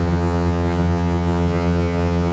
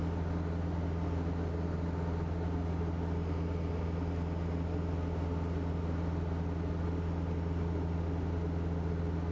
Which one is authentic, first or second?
second